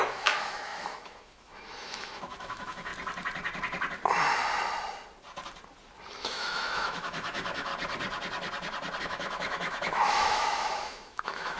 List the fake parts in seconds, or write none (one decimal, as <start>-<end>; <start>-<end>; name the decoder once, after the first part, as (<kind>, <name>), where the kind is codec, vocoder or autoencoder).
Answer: 0.0-2.9 (autoencoder, DAC-VAE); 6.1-7.7; 9.0-11.6